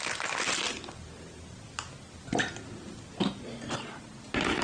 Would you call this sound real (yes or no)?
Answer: yes